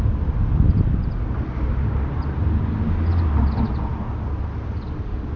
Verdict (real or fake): real